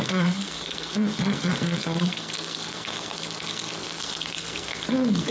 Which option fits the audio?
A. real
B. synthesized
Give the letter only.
B